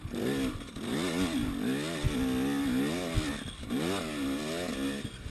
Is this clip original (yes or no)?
yes